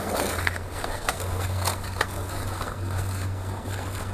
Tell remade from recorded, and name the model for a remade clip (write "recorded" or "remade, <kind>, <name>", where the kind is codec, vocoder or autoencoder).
remade, codec, SNAC